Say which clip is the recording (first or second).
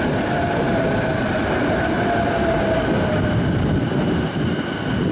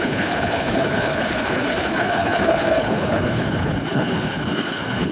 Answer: first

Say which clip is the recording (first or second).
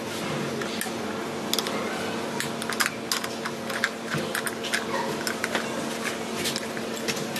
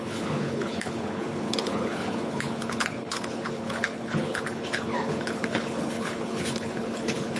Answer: first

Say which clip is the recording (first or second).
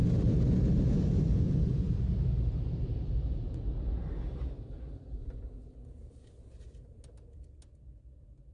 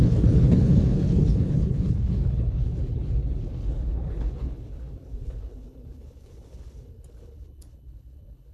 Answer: first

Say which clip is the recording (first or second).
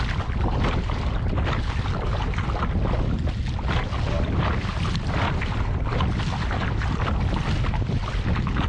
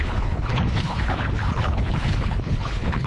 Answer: first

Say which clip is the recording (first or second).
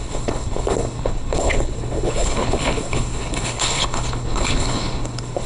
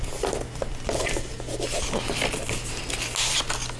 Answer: second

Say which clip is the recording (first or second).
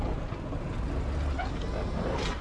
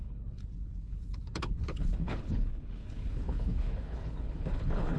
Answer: first